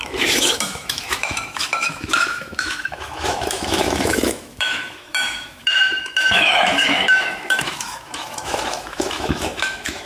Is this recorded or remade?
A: remade